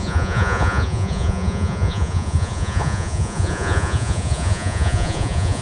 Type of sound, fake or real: fake